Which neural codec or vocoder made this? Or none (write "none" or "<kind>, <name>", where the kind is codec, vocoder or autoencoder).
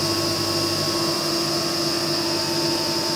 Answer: none